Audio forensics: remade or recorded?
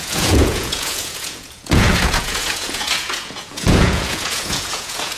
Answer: remade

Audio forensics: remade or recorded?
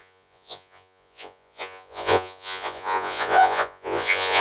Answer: remade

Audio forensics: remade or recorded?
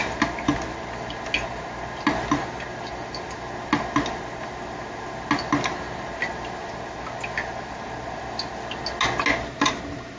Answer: recorded